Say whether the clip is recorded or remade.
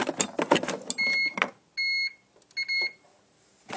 recorded